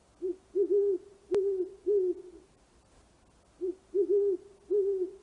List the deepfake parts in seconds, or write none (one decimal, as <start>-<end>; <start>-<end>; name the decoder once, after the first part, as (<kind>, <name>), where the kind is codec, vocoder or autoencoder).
none